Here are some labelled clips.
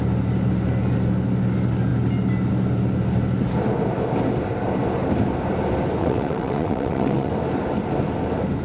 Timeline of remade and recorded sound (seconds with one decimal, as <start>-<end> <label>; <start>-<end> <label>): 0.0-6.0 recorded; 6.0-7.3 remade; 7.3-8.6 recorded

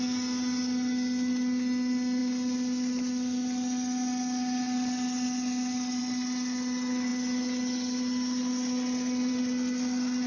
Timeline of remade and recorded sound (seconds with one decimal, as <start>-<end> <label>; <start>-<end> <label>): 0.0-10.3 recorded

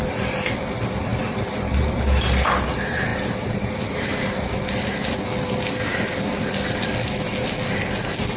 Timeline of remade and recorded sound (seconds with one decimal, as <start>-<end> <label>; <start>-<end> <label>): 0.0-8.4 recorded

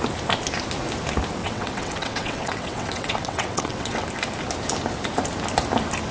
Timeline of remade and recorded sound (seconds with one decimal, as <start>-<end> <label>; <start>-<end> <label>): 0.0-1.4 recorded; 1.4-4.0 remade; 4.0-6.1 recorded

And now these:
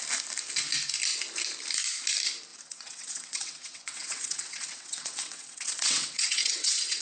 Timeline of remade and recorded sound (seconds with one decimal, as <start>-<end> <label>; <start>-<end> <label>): 0.0-2.5 recorded; 2.5-7.0 remade

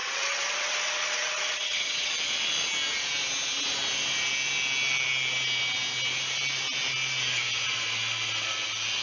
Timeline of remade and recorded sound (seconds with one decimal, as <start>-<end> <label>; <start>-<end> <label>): 0.0-2.1 remade; 2.1-9.0 recorded